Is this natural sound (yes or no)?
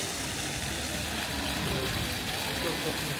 yes